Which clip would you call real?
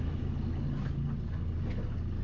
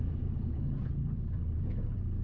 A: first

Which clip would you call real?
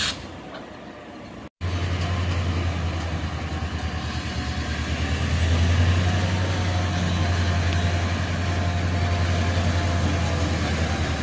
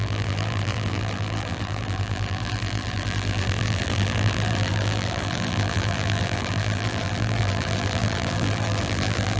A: first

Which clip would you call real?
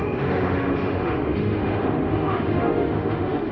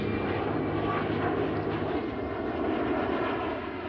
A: second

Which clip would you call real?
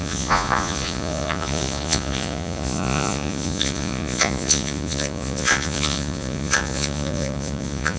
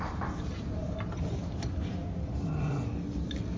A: second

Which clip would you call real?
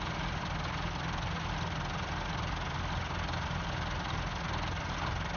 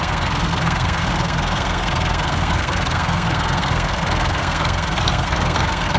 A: first